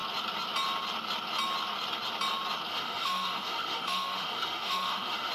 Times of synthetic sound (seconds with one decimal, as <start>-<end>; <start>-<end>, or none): 2.7-5.3